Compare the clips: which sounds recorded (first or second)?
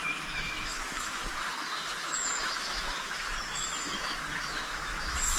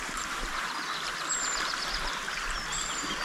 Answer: second